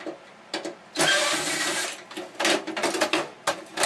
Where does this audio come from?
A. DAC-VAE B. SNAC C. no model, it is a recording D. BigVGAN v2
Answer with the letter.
C